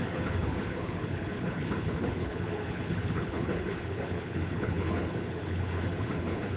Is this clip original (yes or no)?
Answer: no